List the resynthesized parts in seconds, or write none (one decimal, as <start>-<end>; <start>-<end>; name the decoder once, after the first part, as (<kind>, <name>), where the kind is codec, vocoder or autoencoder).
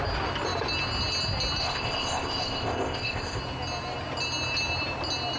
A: 1.6-3.4 (codec, ZipCodec)